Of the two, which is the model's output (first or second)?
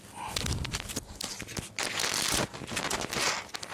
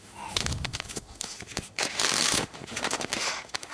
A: second